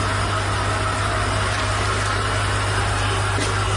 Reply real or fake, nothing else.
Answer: real